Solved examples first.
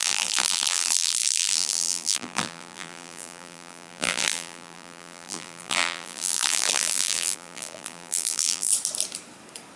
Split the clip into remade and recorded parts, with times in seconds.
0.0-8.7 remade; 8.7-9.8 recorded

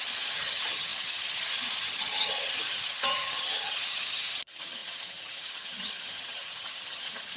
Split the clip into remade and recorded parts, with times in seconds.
0.0-7.4 remade

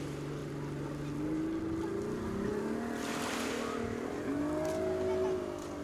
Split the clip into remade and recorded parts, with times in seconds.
0.0-5.8 recorded

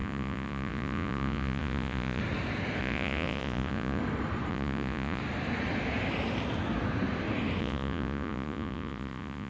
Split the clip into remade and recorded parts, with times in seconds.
0.0-2.2 remade; 2.2-2.8 recorded; 2.8-4.0 remade; 4.0-4.5 recorded; 4.5-5.2 remade; 5.2-7.6 recorded; 7.6-9.5 remade